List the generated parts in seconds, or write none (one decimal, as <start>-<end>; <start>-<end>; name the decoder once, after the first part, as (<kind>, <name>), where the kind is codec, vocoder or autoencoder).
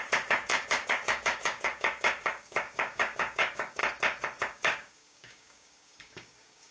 0.0-3.8 (codec, DAC); 4.4-6.7